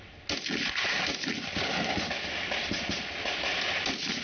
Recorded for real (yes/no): yes